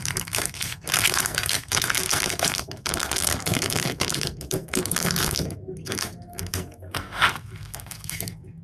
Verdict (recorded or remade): remade